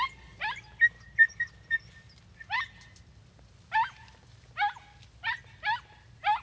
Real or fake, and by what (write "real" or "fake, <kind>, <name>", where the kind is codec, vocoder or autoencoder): real